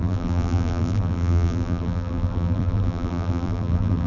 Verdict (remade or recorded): remade